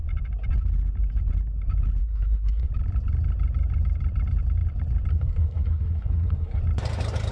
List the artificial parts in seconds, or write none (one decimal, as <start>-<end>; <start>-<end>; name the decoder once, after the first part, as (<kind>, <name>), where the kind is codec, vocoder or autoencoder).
2.0-2.7 (codec, SNAC); 5.1-6.6